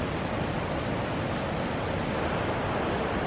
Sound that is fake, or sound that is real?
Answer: real